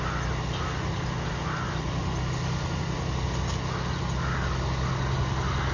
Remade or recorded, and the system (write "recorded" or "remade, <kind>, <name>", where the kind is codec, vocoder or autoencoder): recorded